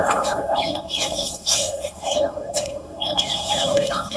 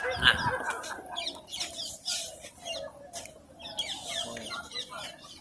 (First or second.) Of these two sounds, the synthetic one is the first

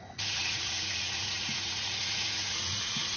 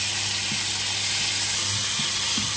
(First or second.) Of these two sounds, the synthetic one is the first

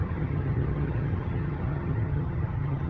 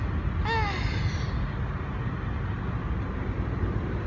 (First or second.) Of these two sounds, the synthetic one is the first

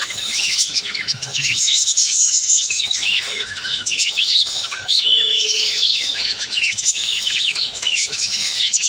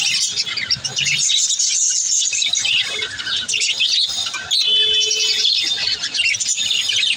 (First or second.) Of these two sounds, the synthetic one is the first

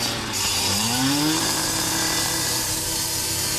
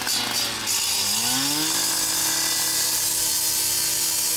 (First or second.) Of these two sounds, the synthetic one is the first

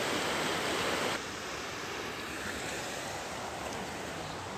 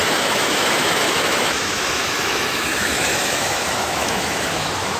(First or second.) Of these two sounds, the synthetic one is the second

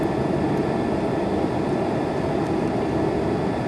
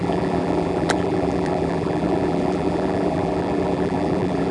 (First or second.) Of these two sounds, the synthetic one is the second